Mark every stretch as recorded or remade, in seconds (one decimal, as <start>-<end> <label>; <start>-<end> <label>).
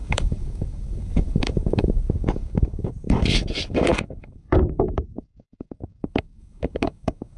0.0-7.4 remade